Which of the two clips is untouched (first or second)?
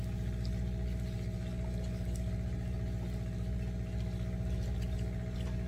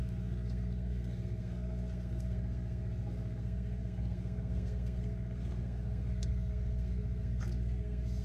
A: first